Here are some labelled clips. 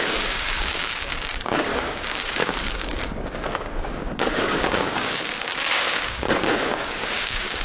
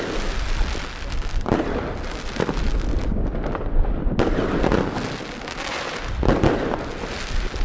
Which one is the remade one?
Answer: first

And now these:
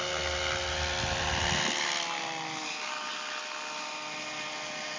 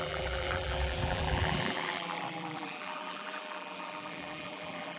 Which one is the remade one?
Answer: second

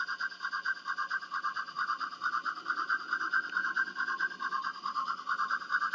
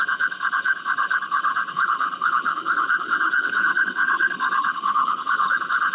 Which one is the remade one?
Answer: second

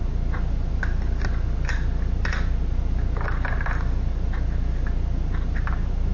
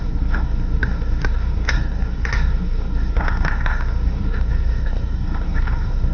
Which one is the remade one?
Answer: second